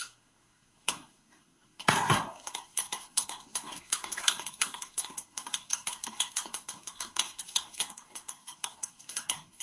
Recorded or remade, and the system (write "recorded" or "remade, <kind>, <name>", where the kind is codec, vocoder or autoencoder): remade, codec, SNAC